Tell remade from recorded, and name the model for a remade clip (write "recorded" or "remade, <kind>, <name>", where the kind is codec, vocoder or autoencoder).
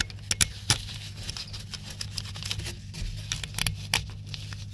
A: recorded